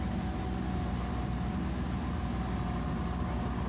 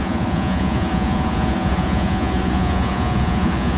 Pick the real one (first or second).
first